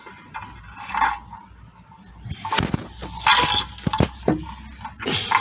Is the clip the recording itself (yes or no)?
yes